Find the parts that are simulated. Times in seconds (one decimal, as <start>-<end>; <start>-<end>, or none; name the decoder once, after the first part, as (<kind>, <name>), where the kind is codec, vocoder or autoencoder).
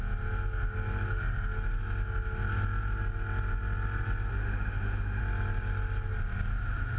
4.3-5.2 (autoencoder, DAC-VAE); 6.5-7.0